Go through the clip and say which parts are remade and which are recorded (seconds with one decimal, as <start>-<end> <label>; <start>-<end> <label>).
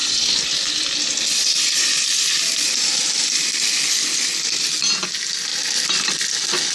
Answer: 0.0-4.0 remade; 4.0-6.7 recorded